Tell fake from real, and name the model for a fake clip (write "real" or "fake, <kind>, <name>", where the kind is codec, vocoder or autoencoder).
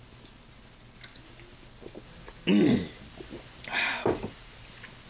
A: real